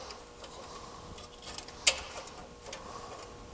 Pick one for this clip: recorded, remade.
recorded